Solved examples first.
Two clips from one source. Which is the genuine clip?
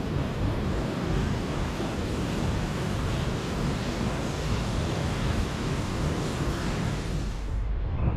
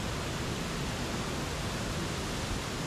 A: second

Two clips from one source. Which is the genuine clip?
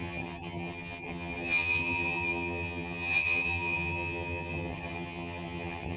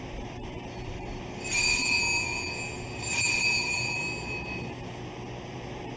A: second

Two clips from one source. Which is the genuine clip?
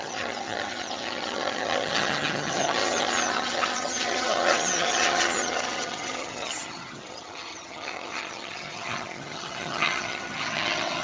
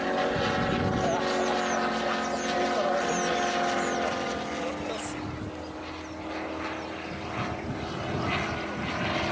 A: second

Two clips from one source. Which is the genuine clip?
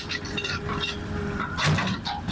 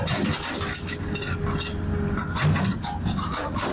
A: second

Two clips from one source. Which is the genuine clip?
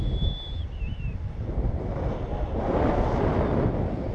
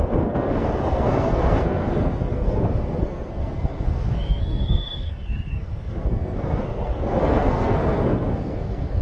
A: first